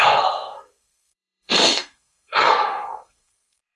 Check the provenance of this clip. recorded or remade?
remade